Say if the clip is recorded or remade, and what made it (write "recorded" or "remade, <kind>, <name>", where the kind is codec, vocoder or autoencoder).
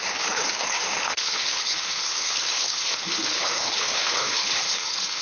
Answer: remade, codec, HILCodec